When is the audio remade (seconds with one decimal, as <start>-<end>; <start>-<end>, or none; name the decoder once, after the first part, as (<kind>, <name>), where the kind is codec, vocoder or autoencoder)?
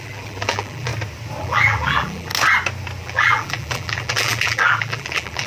0.0-0.9 (vocoder, BigVGAN v2); 1.4-2.3; 3.0-5.5